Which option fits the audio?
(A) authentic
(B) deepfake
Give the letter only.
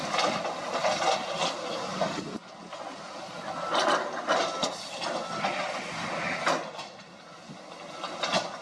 A